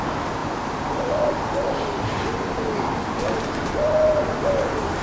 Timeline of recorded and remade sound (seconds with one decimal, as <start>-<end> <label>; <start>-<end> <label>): 0.0-5.0 recorded